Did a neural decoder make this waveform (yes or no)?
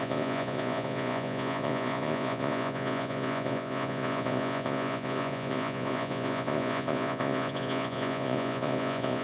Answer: yes